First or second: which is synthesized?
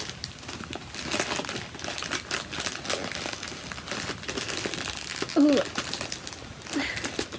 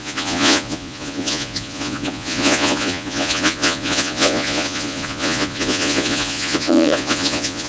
second